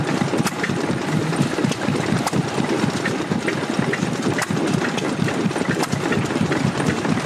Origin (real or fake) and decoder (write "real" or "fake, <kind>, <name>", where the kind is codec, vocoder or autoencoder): real